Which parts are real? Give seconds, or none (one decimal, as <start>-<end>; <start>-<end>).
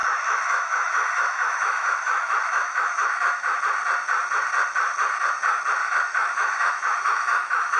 3.6-5.8